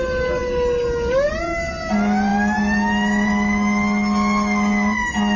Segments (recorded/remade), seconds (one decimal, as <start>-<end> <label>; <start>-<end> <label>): 0.0-5.4 recorded